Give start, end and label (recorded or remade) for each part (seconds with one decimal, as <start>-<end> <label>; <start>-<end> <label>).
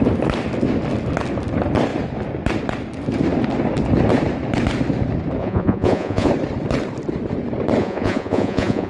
0.0-5.4 recorded; 5.4-6.3 remade; 6.3-7.8 recorded; 7.8-8.9 remade